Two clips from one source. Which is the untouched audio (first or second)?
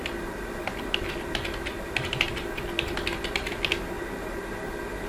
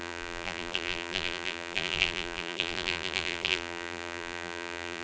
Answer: first